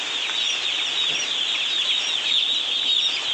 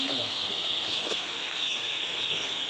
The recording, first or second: first